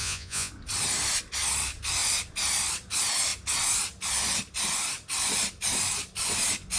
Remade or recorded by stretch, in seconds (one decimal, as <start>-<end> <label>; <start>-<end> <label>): 0.0-0.5 remade; 0.5-6.8 recorded